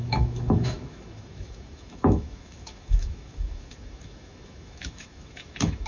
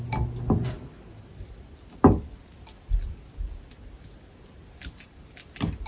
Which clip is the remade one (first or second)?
first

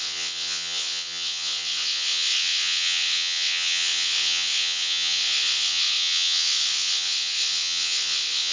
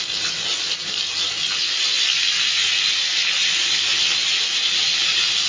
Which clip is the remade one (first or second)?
first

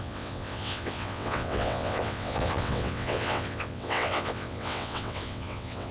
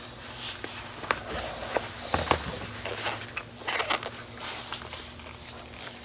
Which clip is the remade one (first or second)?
first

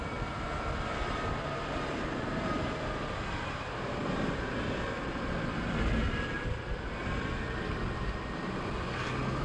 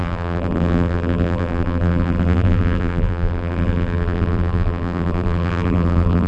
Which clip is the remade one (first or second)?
second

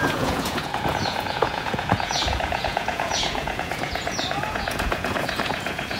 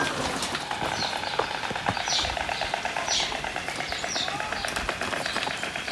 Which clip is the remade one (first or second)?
first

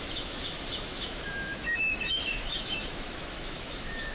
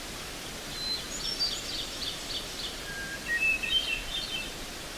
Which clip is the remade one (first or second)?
first